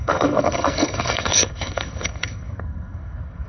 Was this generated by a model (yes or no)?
yes